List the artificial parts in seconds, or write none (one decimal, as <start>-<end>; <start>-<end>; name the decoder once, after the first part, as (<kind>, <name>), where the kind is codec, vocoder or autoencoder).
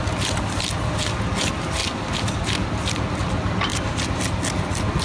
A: none